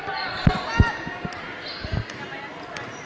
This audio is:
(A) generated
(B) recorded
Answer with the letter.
B